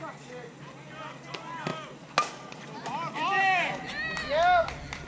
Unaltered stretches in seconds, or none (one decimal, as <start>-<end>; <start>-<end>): 0.0-5.1